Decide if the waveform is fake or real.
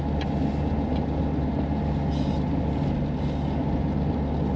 real